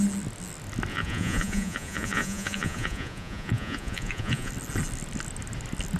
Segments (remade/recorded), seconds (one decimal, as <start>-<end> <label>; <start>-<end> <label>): 0.0-0.9 recorded; 0.9-4.5 remade; 4.5-6.0 recorded